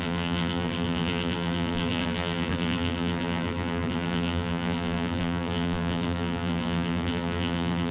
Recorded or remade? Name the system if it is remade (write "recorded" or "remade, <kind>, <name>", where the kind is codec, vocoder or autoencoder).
remade, vocoder, BigVGAN v2